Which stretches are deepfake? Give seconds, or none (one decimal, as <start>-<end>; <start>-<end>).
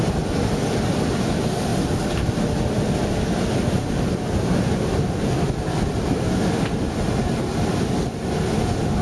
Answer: none